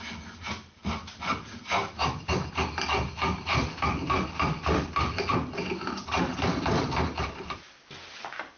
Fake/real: real